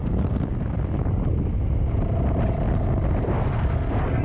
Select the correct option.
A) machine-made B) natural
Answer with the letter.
B